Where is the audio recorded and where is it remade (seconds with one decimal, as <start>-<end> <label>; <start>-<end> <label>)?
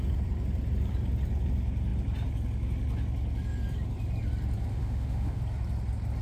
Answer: 0.0-4.7 recorded; 4.7-5.4 remade; 5.4-6.2 recorded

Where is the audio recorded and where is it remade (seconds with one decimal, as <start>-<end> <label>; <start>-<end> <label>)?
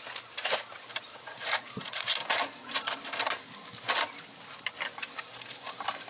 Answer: 0.0-1.1 recorded; 1.1-2.0 remade; 2.0-6.1 recorded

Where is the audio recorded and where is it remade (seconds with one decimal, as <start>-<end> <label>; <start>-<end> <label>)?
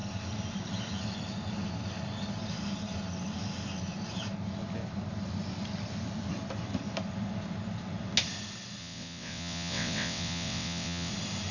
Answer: 0.0-8.8 recorded; 8.8-11.1 remade; 11.1-11.5 recorded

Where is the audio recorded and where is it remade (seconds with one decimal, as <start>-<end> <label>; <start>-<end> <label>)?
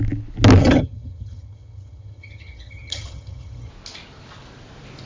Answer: 0.0-0.6 recorded; 0.6-3.7 remade; 3.7-5.1 recorded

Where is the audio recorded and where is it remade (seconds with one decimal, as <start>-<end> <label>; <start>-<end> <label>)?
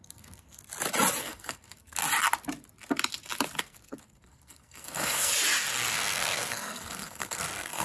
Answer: 0.0-0.6 remade; 0.6-1.2 recorded; 1.2-2.0 remade; 2.0-3.6 recorded; 3.6-5.3 remade; 5.3-5.9 recorded; 5.9-7.8 remade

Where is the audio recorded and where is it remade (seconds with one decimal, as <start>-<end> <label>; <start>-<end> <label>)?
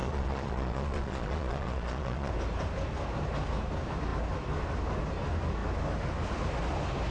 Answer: 0.0-2.3 remade; 2.3-7.1 recorded